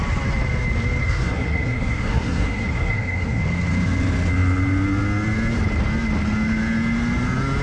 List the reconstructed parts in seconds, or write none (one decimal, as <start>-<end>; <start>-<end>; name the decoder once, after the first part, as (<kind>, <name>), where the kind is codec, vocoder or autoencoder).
1.0-3.4 (codec, SNAC)